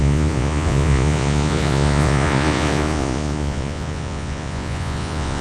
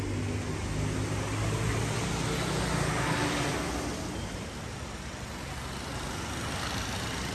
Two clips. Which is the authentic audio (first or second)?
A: second